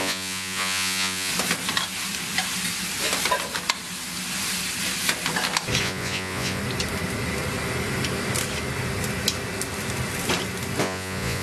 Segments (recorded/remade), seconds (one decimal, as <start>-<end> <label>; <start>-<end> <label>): 0.0-1.3 remade; 1.3-5.8 recorded; 5.8-6.6 remade; 6.6-10.8 recorded; 10.8-11.4 remade